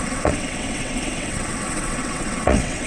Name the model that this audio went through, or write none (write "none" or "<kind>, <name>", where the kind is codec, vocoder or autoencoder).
vocoder, WaveNeXt